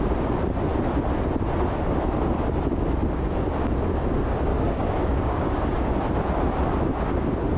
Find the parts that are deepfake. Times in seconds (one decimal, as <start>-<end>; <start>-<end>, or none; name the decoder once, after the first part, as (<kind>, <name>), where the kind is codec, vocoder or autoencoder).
4.5-6.0 (codec, DAC)